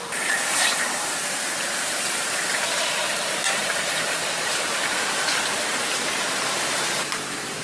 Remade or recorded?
remade